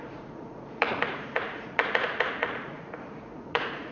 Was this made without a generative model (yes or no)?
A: no